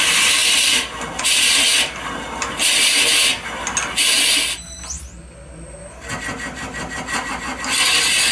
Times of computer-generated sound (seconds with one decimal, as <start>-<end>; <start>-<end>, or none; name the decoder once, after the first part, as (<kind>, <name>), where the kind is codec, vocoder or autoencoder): 0.4-1.2 (vocoder, BigVGAN v2)